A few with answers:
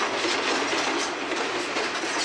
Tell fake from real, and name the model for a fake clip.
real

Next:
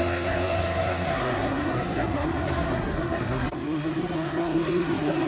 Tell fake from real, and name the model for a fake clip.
fake, codec, SNAC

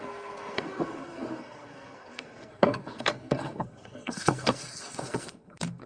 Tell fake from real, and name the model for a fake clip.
fake, codec, SNAC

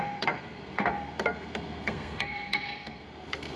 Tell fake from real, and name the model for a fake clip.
fake, codec, SNAC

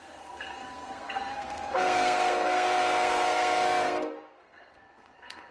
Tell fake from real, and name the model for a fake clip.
fake, codec, SNAC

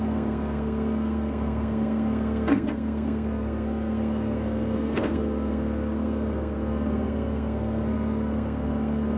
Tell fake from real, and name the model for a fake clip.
fake, codec, SNAC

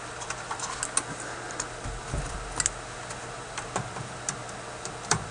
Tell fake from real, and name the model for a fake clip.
real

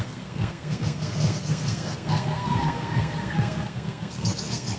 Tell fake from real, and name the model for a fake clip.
fake, codec, SNAC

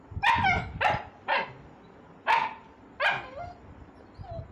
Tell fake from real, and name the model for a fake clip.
real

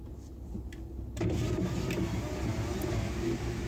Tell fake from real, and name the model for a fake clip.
real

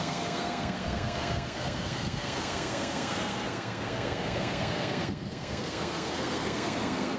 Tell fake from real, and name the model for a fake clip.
fake, codec, SNAC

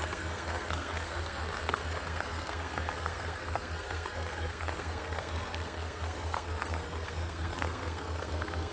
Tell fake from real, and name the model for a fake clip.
fake, codec, SNAC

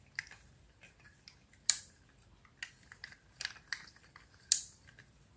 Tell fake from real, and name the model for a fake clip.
real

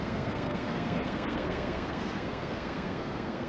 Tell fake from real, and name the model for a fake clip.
fake, codec, SNAC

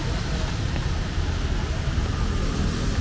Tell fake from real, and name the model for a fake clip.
real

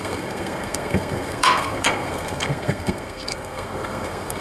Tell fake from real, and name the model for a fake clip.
fake, codec, SNAC